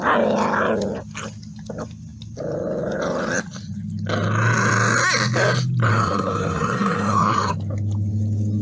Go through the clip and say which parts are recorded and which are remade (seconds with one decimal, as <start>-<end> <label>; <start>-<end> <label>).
0.0-5.9 recorded; 5.9-7.5 remade; 7.5-8.6 recorded